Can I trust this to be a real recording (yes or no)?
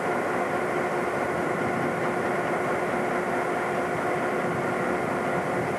yes